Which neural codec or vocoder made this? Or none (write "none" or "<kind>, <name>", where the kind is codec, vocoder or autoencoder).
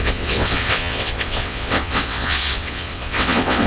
vocoder, WaveNeXt